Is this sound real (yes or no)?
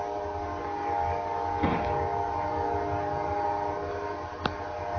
yes